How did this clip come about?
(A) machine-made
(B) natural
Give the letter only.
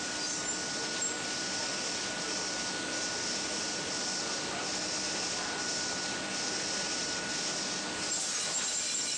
B